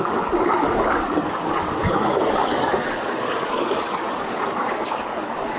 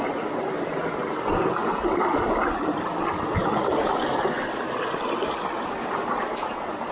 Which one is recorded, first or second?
second